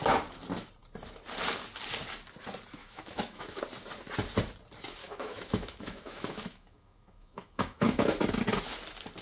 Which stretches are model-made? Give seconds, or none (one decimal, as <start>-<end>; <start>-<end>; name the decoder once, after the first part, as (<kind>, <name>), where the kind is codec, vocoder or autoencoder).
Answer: 2.8-3.6 (autoencoder, DAC-VAE); 5.0-8.2